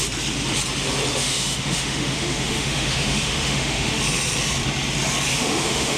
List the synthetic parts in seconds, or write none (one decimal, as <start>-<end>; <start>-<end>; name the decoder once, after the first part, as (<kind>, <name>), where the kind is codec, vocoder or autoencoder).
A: 1.1-4.0 (autoencoder, DAC-VAE); 5.3-6.0

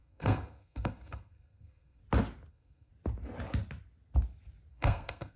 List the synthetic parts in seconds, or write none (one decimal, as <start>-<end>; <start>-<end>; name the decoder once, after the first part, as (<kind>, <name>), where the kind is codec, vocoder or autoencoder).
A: 0.0-2.0 (codec, SNAC); 2.5-2.9; 4.7-5.4

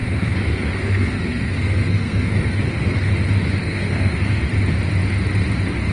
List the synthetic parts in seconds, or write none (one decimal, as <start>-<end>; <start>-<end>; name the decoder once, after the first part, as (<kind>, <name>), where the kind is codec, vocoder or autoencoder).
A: 0.0-3.1 (codec, SNAC); 3.6-4.4

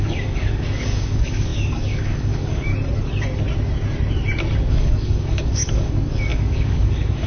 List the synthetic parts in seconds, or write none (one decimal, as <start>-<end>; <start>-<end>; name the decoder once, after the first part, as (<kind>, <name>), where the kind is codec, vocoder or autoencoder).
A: 0.0-2.7 (codec, DAC); 4.7-7.3

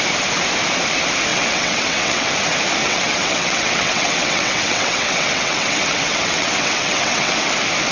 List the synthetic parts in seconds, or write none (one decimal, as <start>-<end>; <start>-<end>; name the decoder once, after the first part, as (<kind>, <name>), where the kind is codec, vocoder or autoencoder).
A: 1.3-2.3 (vocoder, WaveNeXt); 2.8-7.5